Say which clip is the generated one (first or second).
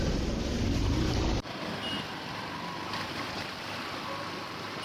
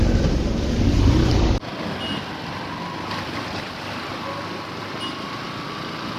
first